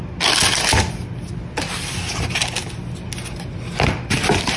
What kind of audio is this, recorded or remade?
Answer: recorded